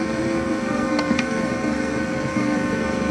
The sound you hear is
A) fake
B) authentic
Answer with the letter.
A